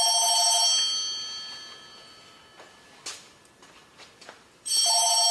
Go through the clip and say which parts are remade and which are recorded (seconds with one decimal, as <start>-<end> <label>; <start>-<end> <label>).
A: 0.0-5.3 recorded